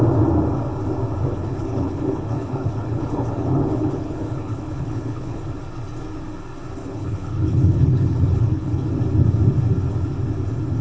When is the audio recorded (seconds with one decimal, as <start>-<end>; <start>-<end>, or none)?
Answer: 0.0-1.3; 5.4-6.8; 8.9-10.8